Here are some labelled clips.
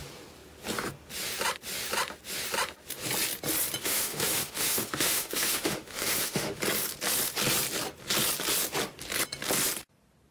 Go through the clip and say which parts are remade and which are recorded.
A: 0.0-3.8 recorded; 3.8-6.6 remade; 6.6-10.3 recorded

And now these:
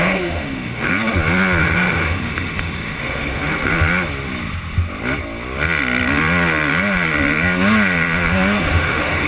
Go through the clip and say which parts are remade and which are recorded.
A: 0.0-0.9 remade; 0.9-1.6 recorded; 1.6-3.7 remade; 3.7-8.6 recorded; 8.6-9.3 remade

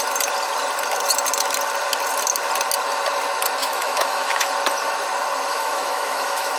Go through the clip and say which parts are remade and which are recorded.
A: 0.0-3.6 recorded; 3.6-4.5 remade; 4.5-5.5 recorded; 5.5-6.6 remade

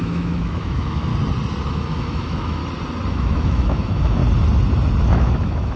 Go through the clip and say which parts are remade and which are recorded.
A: 0.0-1.1 remade; 1.1-1.7 recorded; 1.7-2.6 remade; 2.6-3.1 recorded; 3.1-4.2 remade; 4.2-5.1 recorded; 5.1-5.8 remade

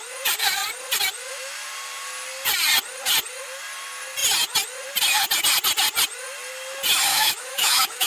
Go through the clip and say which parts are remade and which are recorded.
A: 0.0-7.1 recorded; 7.1-8.1 remade

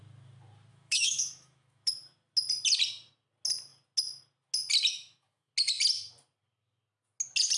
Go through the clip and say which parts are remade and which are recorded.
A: 0.0-0.7 recorded; 0.7-1.9 remade; 1.9-4.9 recorded; 4.9-5.5 remade; 5.5-7.6 recorded

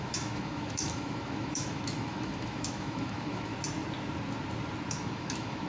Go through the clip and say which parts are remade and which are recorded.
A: 0.0-3.5 remade; 3.5-4.9 recorded; 4.9-5.7 remade

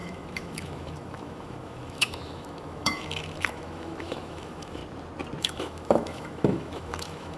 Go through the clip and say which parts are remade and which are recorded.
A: 0.0-4.8 remade; 4.8-5.4 recorded; 5.4-7.4 remade